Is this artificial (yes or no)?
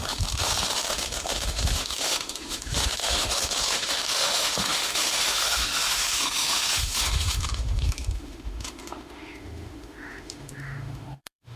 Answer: yes